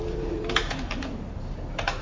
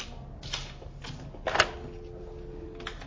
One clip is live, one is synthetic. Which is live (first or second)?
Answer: second